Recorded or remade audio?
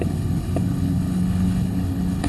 remade